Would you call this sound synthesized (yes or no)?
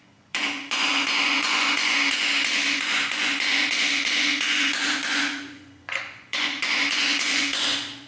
yes